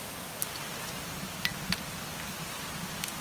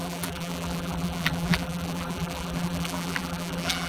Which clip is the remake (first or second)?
second